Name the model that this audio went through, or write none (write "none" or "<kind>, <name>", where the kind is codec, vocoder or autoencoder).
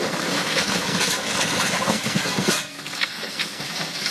codec, SNAC